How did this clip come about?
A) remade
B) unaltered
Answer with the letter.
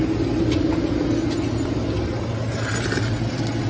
B